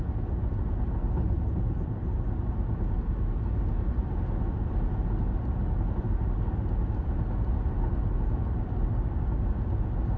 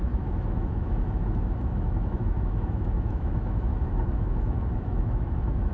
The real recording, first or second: first